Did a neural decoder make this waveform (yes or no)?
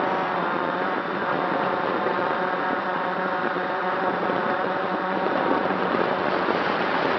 yes